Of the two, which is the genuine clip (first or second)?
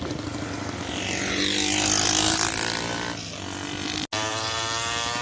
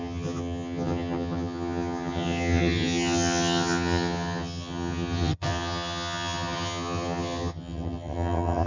first